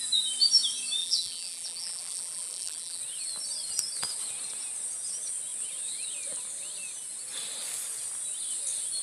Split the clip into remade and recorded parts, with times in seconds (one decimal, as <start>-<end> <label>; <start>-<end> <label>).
0.0-1.0 recorded; 1.0-3.0 remade; 3.0-9.0 recorded